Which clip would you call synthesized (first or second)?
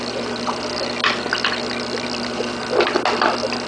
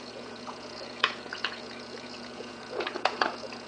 second